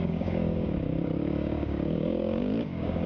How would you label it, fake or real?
fake